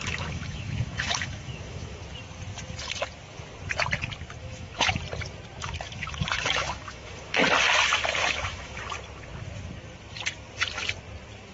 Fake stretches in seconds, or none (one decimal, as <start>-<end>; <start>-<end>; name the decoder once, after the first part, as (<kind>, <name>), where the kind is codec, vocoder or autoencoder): 0.0-2.0 (autoencoder, DAC-VAE); 4.4-5.0; 5.6-7.4; 8.2-8.8